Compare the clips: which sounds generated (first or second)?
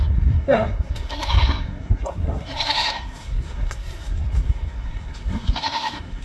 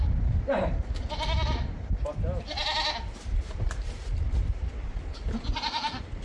first